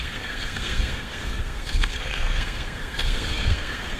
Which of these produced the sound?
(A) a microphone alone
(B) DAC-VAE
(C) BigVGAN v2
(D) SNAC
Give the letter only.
D